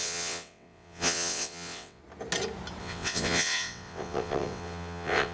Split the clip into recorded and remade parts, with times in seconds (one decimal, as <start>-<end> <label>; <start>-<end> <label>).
0.0-2.0 remade; 2.0-2.8 recorded; 2.8-5.3 remade